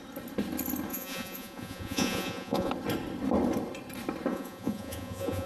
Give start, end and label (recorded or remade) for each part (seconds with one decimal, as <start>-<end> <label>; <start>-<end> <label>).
0.0-0.9 recorded; 0.9-2.7 remade; 2.7-4.3 recorded; 4.3-5.5 remade